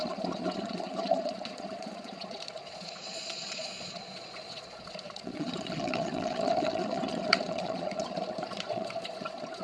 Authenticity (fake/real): fake